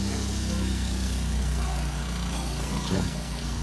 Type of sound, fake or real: fake